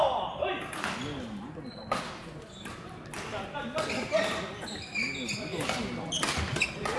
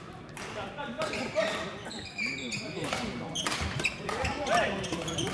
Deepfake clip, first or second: second